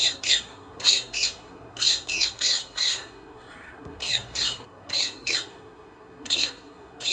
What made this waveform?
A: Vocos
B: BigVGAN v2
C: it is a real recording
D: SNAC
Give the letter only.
D